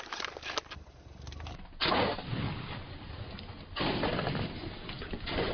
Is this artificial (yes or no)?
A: no